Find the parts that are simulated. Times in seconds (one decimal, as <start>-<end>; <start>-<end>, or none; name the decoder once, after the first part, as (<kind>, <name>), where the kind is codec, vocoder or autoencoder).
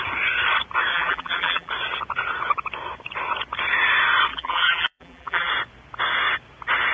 0.9-1.7 (vocoder, BigVGAN v2); 4.3-5.5